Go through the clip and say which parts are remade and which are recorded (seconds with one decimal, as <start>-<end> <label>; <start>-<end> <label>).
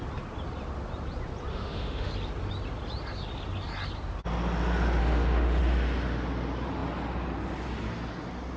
0.0-1.5 recorded; 1.5-2.1 remade; 2.1-5.0 recorded; 5.0-5.6 remade; 5.6-8.6 recorded